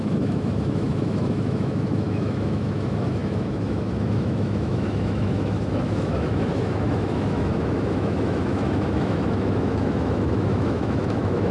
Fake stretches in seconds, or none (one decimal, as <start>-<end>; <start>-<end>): 0.0-11.5